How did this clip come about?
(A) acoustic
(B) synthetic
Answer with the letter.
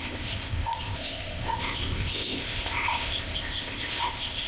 B